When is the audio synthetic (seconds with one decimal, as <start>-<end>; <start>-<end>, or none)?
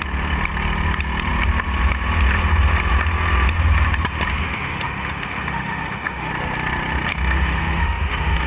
4.4-6.3; 7.1-8.5